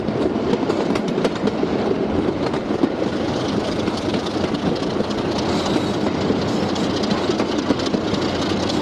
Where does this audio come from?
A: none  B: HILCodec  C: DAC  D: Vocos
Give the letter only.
A